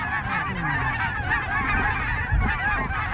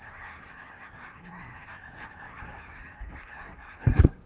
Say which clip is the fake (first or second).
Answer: second